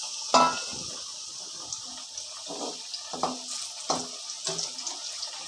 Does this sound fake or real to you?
real